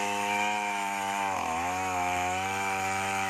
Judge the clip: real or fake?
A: fake